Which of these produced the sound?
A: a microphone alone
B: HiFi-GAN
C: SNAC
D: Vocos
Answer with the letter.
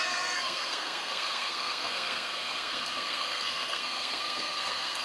C